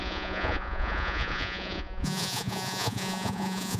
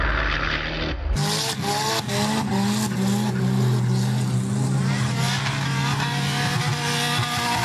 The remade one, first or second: first